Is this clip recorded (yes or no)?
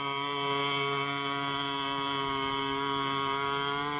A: yes